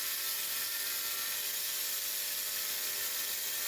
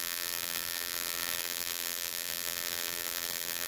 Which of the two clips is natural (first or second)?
first